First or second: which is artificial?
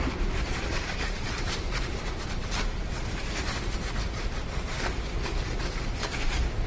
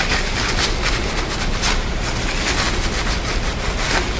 first